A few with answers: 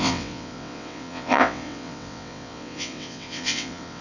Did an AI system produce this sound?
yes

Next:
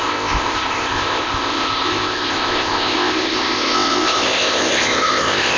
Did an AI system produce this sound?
yes